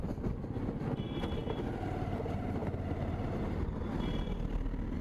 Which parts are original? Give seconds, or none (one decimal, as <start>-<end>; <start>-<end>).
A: 0.0-5.0